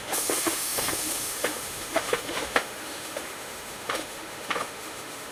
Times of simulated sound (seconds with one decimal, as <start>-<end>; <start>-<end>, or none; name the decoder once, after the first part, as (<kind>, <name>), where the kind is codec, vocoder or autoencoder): 0.0-5.3 (autoencoder, DAC-VAE)